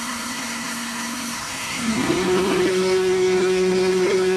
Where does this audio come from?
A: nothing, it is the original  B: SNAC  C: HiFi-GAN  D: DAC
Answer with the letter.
B